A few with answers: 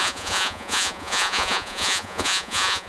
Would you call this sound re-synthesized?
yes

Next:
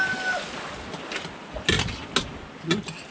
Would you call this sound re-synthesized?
no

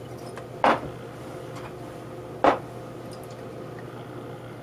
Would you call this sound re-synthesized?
no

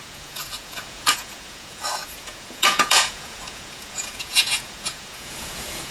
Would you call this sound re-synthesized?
yes